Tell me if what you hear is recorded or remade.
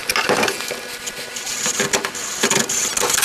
recorded